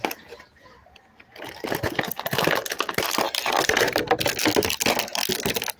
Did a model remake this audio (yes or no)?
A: no